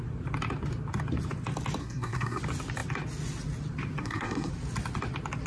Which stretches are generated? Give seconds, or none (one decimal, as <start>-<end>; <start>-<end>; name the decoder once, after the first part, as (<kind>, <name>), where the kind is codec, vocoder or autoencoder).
1.8-2.4 (codec, SNAC); 4.0-4.5